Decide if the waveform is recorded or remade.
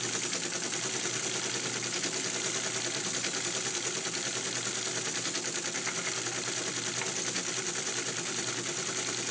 recorded